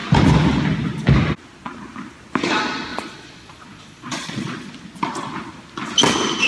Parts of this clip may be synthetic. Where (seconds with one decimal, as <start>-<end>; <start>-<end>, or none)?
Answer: 2.9-4.7

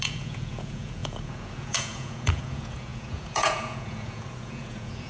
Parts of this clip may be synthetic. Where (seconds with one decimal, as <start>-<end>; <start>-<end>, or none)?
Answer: 0.0-5.1

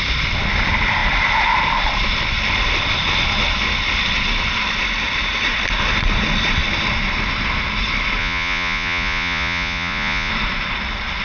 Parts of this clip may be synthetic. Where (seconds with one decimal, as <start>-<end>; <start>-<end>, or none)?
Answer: 8.2-10.3

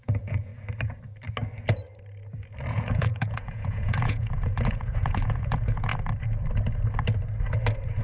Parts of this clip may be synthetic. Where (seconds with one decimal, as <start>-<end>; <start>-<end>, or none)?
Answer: 0.0-0.5; 2.7-5.9

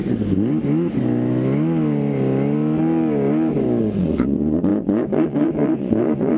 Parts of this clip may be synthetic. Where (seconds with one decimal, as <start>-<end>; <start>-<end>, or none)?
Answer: 3.8-6.4

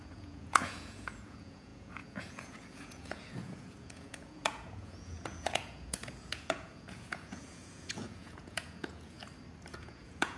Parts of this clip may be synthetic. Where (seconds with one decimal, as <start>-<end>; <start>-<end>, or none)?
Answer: 0.0-9.2; 9.7-10.4